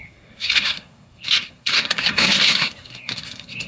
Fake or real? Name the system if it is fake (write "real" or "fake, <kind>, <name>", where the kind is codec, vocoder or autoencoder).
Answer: fake, codec, SNAC